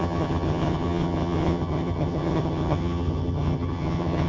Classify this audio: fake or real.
fake